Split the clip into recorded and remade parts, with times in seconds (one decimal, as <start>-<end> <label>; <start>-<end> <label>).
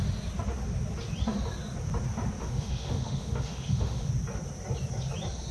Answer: 0.0-2.4 recorded; 2.4-4.1 remade; 4.1-5.5 recorded